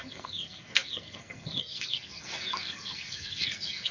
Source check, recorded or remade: remade